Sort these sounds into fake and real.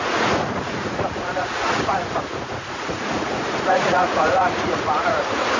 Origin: fake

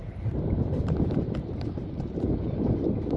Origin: real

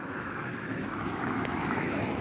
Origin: fake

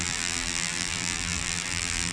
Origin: fake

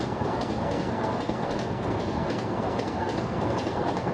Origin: fake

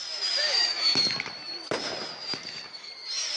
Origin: real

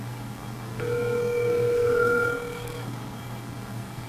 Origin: fake